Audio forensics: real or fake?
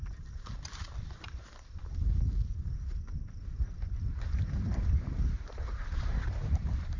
fake